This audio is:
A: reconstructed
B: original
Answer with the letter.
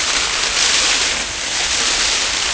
B